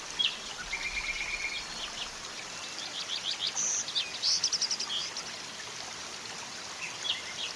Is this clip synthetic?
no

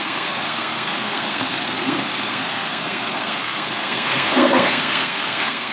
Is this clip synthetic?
yes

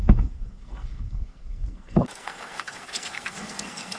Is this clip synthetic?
yes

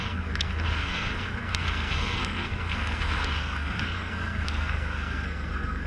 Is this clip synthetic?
yes